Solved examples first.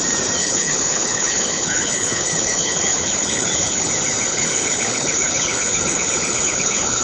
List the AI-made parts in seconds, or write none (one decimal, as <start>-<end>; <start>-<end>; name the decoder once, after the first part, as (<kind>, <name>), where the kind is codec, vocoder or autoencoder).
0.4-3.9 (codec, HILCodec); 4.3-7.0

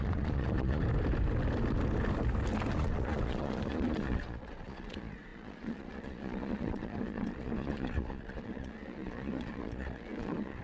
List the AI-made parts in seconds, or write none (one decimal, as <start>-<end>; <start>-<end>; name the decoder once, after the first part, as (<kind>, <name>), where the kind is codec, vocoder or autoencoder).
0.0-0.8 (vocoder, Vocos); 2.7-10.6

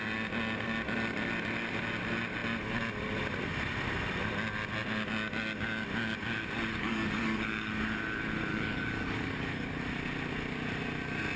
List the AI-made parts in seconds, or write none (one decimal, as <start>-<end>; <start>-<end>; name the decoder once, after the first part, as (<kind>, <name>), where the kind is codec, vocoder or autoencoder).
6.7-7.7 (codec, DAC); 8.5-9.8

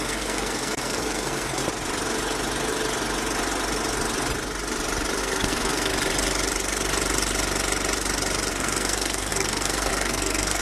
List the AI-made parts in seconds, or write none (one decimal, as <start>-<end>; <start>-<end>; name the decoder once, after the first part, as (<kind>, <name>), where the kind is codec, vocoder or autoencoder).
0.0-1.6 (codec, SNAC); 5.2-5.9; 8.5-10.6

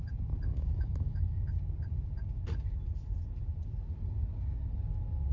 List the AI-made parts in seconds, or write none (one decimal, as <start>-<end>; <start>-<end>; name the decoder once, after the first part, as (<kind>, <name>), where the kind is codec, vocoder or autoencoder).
0.5-1.4 (autoencoder, DAC-VAE)

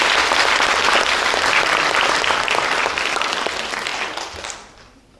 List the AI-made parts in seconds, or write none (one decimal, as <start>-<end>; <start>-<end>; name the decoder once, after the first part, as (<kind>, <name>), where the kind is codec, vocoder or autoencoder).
2.8-3.4 (vocoder, BigVGAN v2); 3.9-5.2

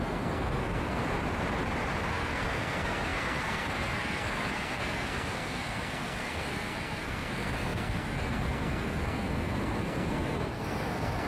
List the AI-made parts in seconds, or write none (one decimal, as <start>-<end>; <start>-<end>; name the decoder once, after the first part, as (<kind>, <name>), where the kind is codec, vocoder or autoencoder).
0.0-1.0 (codec, SNAC); 2.1-11.3